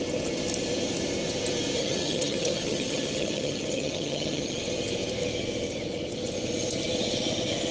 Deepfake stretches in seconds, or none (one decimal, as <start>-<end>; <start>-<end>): 1.8-4.6